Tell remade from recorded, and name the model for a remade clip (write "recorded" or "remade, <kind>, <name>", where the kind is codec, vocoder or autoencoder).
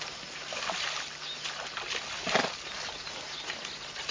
recorded